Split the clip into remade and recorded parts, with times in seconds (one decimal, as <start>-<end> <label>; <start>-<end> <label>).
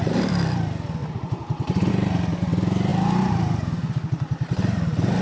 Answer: 0.0-1.0 recorded; 1.0-1.9 remade; 1.9-2.9 recorded; 2.9-5.2 remade